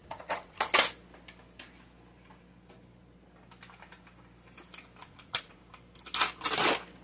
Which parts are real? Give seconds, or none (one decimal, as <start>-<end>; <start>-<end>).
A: 0.7-5.0; 5.6-7.0